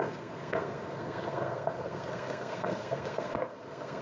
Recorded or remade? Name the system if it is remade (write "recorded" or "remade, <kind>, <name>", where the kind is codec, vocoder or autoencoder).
remade, codec, SNAC